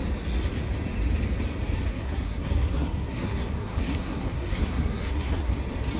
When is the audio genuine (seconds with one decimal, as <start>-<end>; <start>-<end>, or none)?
0.0-1.9; 5.5-6.0